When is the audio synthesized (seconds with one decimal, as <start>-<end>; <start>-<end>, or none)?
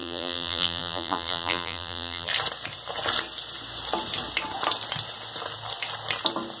0.0-2.3